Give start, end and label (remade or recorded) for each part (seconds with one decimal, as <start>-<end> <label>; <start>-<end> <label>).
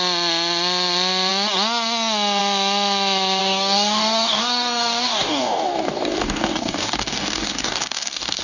0.0-3.4 recorded; 3.4-8.4 remade